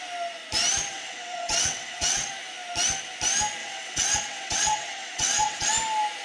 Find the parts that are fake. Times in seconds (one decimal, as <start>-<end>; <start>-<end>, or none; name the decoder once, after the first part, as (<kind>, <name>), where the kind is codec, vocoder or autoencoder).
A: 0.9-2.3 (vocoder, WaveNeXt); 3.6-5.7